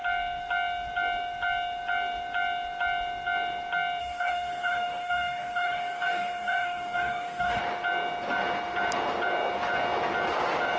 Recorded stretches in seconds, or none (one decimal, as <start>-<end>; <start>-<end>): 0.0-4.0; 7.6-10.8